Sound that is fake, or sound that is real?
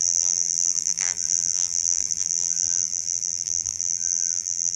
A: fake